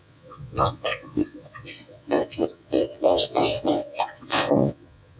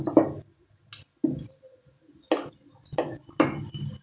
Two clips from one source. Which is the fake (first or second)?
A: first